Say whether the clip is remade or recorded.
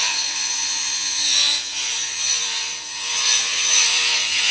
remade